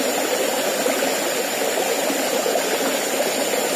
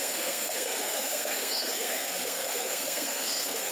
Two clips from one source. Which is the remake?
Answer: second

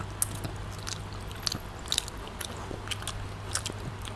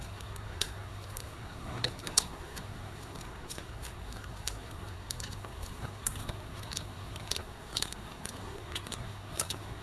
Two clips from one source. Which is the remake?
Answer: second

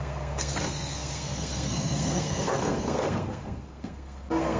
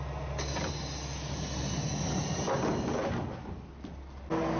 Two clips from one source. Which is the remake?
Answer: first